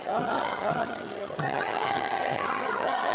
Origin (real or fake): fake